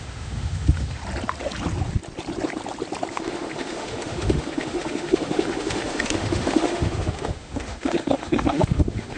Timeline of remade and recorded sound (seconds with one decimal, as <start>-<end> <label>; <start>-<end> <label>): 0.0-1.0 remade; 1.0-3.1 recorded; 3.1-9.2 remade